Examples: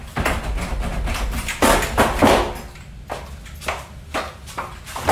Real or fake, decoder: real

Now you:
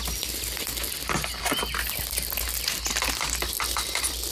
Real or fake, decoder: real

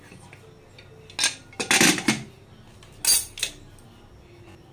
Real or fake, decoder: real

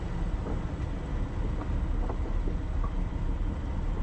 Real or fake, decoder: real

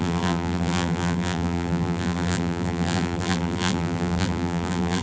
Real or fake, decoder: fake, vocoder, BigVGAN v2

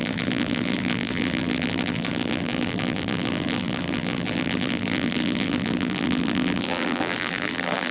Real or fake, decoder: fake, vocoder, BigVGAN v2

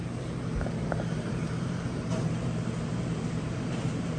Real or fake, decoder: fake, vocoder, BigVGAN v2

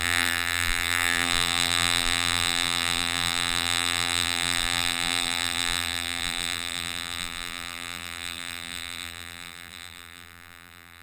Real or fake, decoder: fake, vocoder, BigVGAN v2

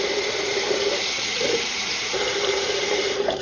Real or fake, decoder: fake, vocoder, BigVGAN v2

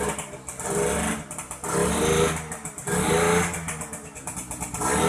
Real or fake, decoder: real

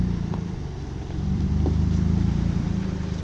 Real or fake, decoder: fake, vocoder, BigVGAN v2